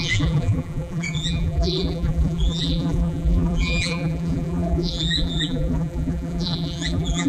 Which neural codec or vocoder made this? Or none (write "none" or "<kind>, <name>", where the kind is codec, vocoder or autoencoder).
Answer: vocoder, BigVGAN v2